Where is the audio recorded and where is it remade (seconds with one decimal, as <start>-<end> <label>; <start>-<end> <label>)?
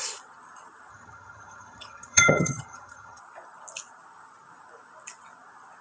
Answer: 0.0-0.9 recorded; 0.9-3.2 remade; 3.2-5.8 recorded